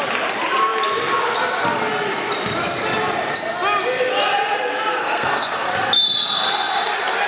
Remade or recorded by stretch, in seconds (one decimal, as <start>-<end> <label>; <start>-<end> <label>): 0.0-5.0 recorded; 5.0-5.7 remade; 5.7-7.3 recorded